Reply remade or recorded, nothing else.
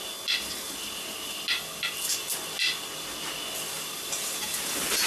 recorded